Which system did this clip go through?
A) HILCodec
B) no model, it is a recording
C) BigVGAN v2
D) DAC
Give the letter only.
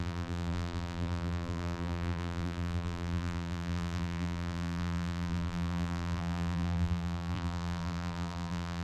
C